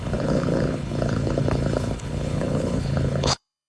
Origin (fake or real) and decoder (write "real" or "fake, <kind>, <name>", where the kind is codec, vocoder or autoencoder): fake, codec, HILCodec